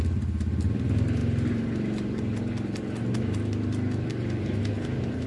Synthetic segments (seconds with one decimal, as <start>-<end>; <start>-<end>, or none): none